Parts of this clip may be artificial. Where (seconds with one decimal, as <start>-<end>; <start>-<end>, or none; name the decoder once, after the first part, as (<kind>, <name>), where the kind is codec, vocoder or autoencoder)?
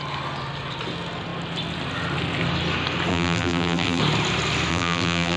3.1-4.0 (vocoder, BigVGAN v2); 4.7-5.4